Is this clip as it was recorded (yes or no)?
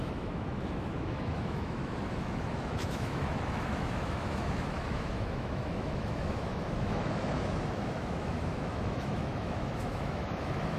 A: no